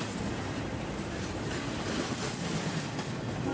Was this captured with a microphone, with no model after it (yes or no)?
yes